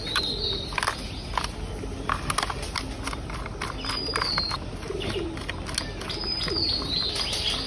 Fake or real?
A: real